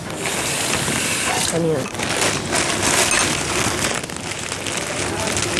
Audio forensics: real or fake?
real